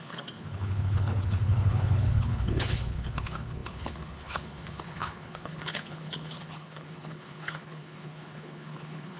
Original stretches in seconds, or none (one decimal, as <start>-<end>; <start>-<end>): none